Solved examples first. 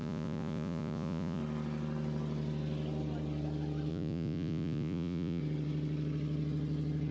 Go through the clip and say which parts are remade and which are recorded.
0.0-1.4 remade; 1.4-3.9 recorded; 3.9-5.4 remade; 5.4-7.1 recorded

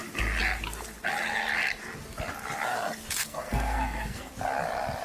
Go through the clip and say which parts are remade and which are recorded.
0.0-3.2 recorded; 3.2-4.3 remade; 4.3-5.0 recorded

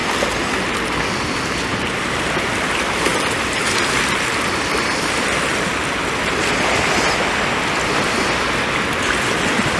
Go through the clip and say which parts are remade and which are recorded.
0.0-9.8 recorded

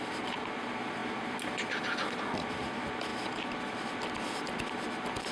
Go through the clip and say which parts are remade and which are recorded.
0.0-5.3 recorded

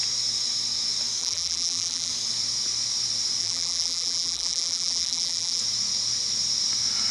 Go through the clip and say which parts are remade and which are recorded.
0.0-1.2 recorded; 1.2-2.1 remade; 2.1-3.4 recorded; 3.4-5.6 remade; 5.6-7.1 recorded